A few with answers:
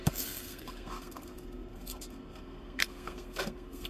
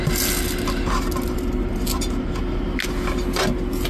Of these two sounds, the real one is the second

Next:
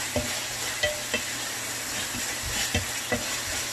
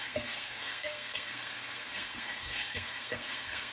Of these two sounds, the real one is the first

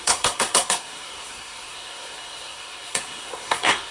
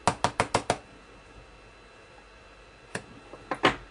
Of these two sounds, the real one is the second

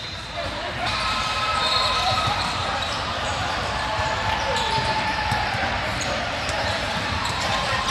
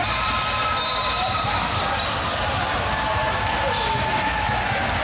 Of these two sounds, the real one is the second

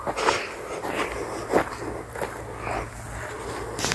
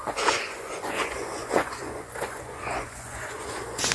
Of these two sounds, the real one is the first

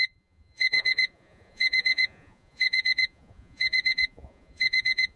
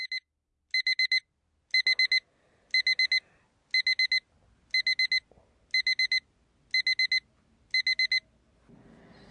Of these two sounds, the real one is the second